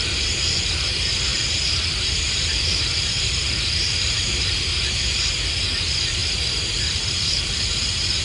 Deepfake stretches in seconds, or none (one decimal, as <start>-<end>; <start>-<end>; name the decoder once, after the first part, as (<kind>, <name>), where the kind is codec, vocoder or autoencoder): 0.0-6.2 (vocoder, BigVGAN v2); 6.8-8.2